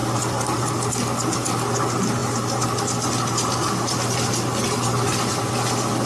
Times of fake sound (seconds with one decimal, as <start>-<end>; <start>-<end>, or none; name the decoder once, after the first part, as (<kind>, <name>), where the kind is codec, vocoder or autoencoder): none